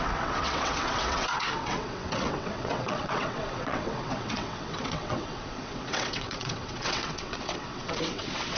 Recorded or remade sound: remade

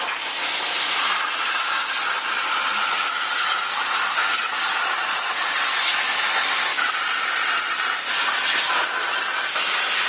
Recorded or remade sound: recorded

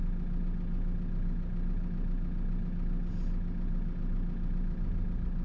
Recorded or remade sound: recorded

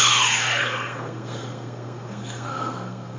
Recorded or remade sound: remade